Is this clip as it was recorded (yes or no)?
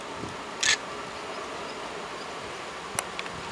yes